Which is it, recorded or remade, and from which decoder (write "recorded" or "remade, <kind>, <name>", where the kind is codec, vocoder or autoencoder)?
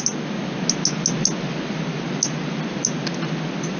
recorded